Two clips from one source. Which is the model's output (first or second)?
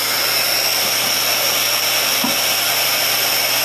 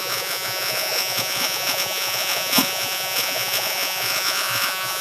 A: second